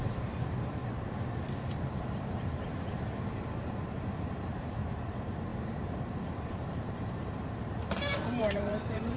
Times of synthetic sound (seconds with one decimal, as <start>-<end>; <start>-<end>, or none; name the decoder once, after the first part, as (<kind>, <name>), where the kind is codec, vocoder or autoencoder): 0.0-0.8 (vocoder, BigVGAN v2); 2.0-9.2